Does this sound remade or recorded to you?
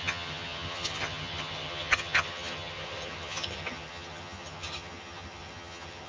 remade